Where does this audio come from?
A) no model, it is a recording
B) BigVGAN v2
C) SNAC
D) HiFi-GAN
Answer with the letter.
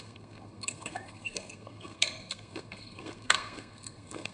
C